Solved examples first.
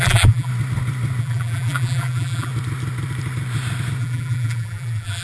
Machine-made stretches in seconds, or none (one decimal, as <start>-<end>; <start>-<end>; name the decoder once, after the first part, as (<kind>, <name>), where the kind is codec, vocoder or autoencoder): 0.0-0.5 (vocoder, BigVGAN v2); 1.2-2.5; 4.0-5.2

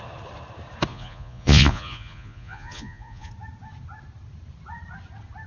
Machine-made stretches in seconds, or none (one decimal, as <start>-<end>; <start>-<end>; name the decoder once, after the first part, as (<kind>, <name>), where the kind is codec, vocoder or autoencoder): 0.9-3.3 (vocoder, Vocos)

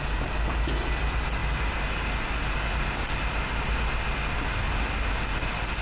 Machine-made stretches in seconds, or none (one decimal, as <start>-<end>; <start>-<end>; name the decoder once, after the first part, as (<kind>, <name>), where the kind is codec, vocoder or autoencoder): none

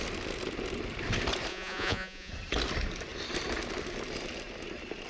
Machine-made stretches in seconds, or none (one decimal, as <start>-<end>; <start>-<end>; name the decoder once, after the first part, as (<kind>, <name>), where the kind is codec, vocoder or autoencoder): 1.5-2.3 (vocoder, Vocos)

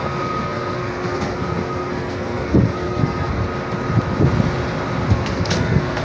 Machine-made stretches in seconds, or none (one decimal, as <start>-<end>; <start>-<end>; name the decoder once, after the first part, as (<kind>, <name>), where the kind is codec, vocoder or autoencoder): 0.0-3.4 (codec, SNAC); 5.1-6.0

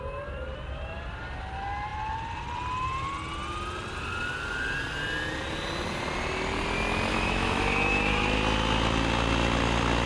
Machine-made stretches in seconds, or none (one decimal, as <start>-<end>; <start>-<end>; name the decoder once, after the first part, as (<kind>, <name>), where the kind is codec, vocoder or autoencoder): 7.1-8.4 (autoencoder, DAC-VAE)

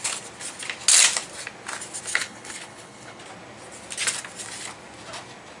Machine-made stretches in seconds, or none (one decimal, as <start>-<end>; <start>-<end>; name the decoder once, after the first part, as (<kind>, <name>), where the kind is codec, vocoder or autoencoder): 2.1-3.2 (codec, HILCodec)

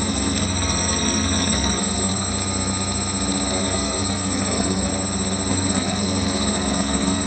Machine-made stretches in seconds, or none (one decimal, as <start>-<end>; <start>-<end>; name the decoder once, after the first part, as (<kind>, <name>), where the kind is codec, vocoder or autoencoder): 0.0-2.3 (codec, SNAC); 3.6-4.9; 5.5-7.3